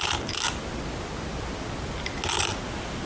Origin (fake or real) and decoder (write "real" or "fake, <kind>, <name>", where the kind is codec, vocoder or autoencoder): real